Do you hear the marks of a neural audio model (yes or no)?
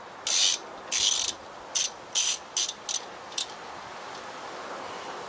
no